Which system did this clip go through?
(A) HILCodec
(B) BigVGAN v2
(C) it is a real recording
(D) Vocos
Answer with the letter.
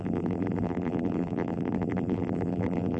B